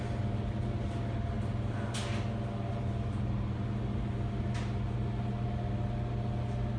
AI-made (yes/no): no